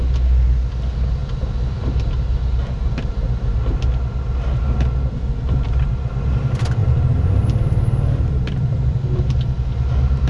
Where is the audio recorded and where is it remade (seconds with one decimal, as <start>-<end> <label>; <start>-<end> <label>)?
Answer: 0.0-6.8 recorded; 6.8-9.2 remade; 9.2-10.3 recorded